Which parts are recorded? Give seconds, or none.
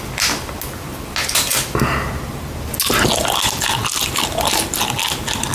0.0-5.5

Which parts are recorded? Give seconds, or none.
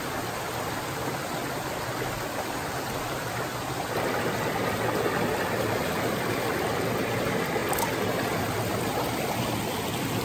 0.0-10.2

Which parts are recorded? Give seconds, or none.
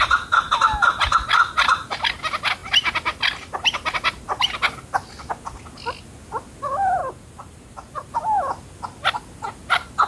0.0-7.0; 8.1-10.1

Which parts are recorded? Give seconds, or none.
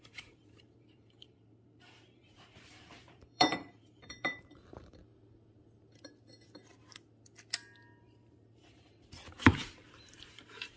5.0-8.0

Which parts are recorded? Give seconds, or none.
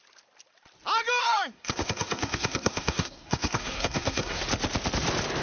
0.0-1.2; 4.4-5.4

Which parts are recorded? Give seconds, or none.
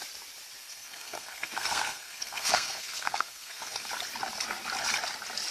0.0-0.6; 3.9-5.5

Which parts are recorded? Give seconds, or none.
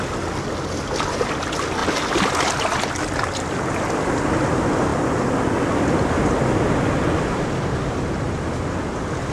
0.0-9.3